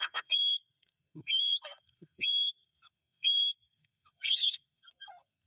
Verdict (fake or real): fake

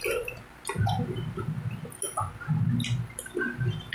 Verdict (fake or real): real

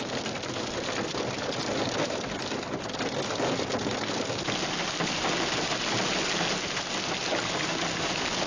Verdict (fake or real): real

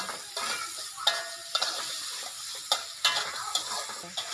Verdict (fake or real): real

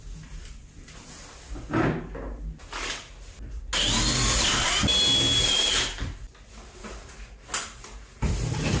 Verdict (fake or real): real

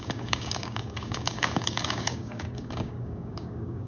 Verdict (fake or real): fake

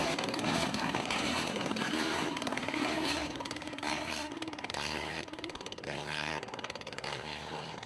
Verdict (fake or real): fake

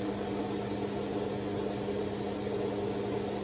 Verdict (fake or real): real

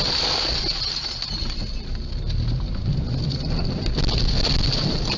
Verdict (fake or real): real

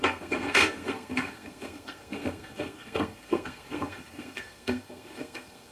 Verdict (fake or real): fake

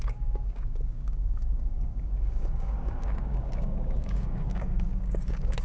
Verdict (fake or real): fake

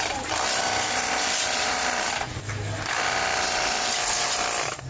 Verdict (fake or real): real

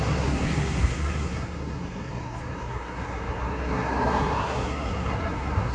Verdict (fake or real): fake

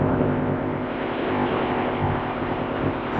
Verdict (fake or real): fake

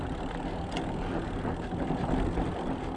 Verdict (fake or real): real